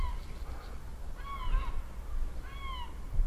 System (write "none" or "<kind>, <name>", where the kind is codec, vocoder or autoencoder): none